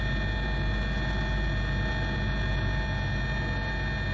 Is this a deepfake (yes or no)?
no